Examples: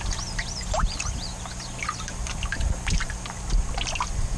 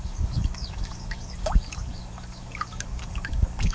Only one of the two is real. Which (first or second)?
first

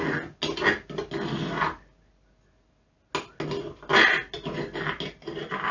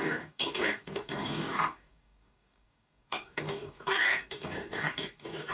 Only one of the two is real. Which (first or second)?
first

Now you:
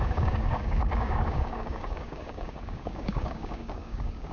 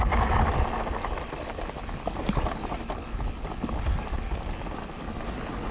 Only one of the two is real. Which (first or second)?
second